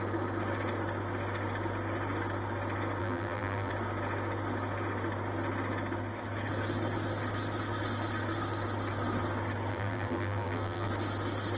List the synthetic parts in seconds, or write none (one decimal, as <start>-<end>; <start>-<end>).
3.0-3.7; 9.7-10.9